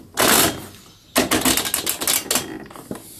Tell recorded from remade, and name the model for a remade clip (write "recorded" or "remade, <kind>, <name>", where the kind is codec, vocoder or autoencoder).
recorded